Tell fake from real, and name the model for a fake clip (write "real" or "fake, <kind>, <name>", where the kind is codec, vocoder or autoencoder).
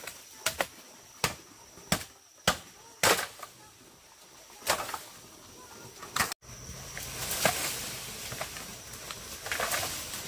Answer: real